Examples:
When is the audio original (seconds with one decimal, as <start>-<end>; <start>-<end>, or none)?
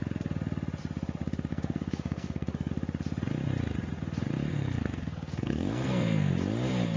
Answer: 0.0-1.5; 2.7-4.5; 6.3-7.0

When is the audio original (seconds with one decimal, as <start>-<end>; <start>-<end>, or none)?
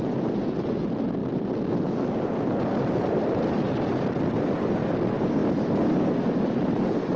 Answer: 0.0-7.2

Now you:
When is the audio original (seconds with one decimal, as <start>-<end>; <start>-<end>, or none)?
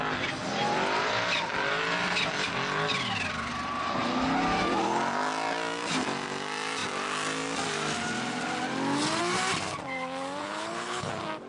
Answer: 0.0-10.4; 11.1-11.5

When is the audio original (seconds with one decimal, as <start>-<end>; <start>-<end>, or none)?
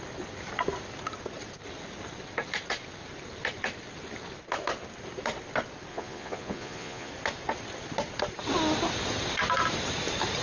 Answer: 0.0-5.9; 7.1-10.4